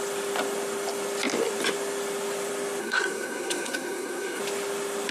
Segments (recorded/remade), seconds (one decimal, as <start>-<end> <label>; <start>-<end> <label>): 0.0-2.8 recorded; 2.8-4.4 remade; 4.4-5.1 recorded